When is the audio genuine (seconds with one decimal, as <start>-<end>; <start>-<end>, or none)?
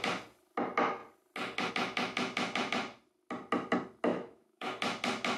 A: 0.0-4.1; 4.7-5.4